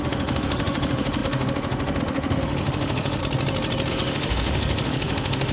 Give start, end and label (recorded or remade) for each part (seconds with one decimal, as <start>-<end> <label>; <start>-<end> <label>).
0.0-3.2 remade; 3.2-3.9 recorded; 3.9-5.5 remade

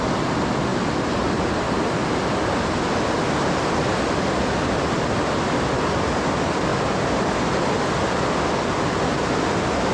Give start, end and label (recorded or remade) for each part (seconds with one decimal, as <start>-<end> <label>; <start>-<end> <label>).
0.0-9.9 recorded

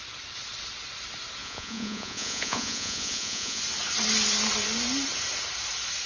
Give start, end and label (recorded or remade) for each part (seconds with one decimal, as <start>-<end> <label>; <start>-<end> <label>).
0.0-1.4 recorded; 1.4-3.6 remade; 3.6-6.1 recorded

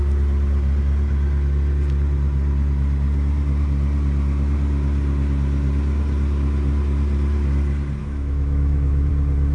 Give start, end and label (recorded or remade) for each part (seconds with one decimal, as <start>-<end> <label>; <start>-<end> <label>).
0.0-8.0 recorded; 8.0-9.1 remade; 9.1-9.5 recorded

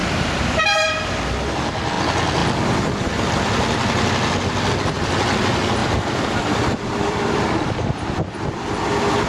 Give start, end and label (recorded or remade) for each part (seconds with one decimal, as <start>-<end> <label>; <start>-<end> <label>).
0.0-0.9 remade; 0.9-5.8 recorded; 5.8-8.2 remade; 8.2-9.3 recorded

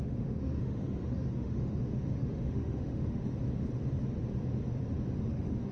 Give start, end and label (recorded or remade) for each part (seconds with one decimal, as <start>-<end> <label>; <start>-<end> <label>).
0.0-3.3 remade; 3.3-5.3 recorded; 5.3-5.7 remade

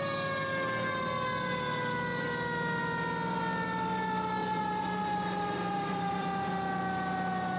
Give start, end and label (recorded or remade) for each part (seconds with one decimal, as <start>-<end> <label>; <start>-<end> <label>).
0.0-4.4 recorded; 4.4-6.5 remade; 6.5-7.6 recorded